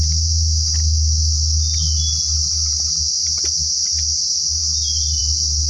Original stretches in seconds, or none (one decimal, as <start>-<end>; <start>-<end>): 0.0-5.7